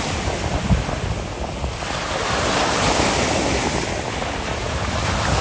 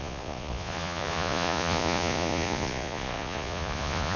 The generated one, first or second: second